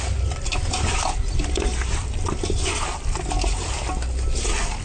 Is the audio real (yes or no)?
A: yes